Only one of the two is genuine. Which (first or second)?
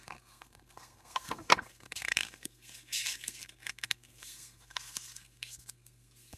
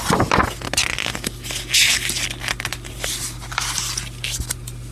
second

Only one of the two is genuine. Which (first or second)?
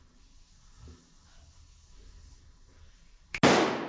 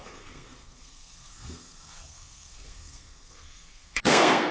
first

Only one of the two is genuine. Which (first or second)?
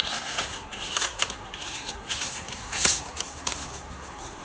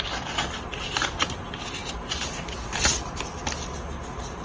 second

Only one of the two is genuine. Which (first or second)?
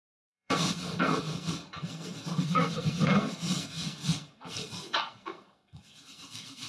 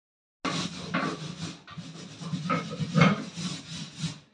second